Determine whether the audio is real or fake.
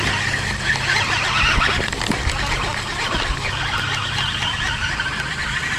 real